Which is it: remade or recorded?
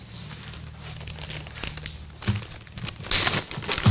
recorded